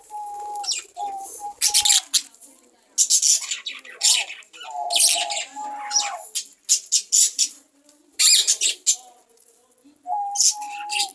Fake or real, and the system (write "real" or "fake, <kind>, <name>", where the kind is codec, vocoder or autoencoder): real